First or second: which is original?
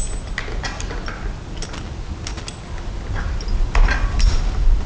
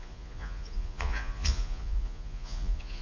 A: first